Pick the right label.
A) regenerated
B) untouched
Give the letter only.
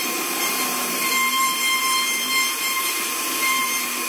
A